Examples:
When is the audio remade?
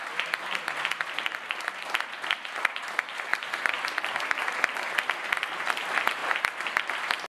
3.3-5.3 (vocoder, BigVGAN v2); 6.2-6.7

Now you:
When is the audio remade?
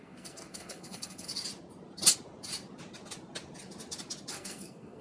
0.0-1.3 (codec, SNAC); 4.3-5.0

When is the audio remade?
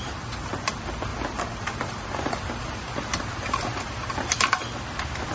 1.1-4.1 (vocoder, BigVGAN v2)